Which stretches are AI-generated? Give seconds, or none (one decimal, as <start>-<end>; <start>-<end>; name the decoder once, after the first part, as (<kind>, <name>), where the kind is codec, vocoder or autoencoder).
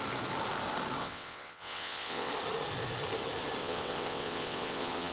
1.0-2.3 (vocoder, WaveNeXt); 3.6-5.1